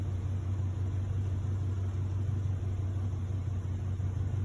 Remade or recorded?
recorded